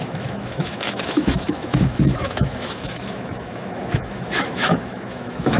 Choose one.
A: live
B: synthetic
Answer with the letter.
B